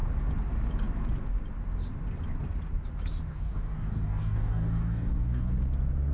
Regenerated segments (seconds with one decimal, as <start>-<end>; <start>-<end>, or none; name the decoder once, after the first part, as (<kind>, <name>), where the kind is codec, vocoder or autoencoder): 3.3-5.5 (codec, DAC)